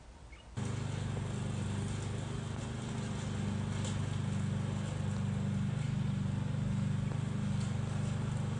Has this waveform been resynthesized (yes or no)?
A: no